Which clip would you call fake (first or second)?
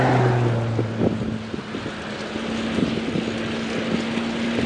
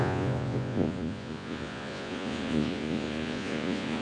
second